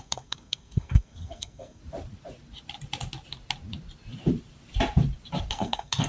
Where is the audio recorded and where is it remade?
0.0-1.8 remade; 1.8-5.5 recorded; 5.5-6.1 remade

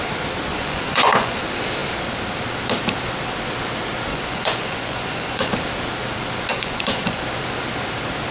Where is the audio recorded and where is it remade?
0.0-0.5 recorded; 0.5-1.4 remade; 1.4-4.1 recorded; 4.1-5.5 remade; 5.5-6.5 recorded; 6.5-7.2 remade; 7.2-8.3 recorded

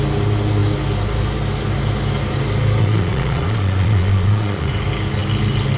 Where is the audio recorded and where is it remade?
0.0-2.8 recorded; 2.8-4.7 remade; 4.7-5.8 recorded

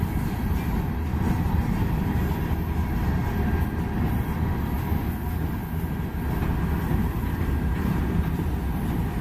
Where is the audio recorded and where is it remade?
0.0-7.0 recorded; 7.0-8.0 remade; 8.0-9.2 recorded

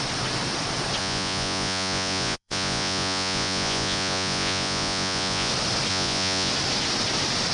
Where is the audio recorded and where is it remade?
0.0-1.0 recorded; 1.0-5.5 remade; 5.5-5.9 recorded; 5.9-6.5 remade; 6.5-7.5 recorded

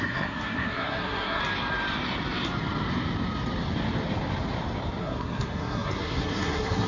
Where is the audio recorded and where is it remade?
0.0-1.4 remade; 1.4-5.0 recorded; 5.0-6.9 remade